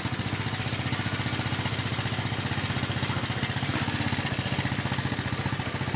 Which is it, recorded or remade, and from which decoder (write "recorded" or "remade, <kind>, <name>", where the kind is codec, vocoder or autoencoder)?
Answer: recorded